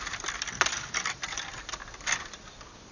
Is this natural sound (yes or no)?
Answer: yes